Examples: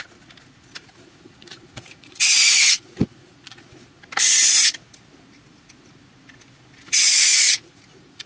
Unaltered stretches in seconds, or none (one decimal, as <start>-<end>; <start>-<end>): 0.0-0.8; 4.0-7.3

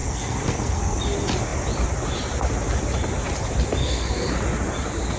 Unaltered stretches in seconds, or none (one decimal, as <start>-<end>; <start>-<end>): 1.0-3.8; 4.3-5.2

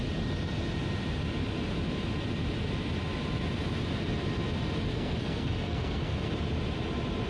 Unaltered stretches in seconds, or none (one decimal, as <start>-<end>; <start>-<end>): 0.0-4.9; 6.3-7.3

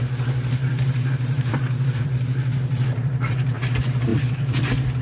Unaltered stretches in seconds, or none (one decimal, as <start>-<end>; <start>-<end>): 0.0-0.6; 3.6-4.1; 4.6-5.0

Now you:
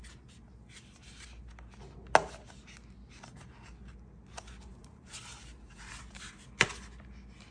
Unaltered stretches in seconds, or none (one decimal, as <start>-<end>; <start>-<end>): 0.0-7.5